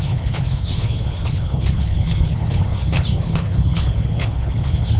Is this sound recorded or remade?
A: remade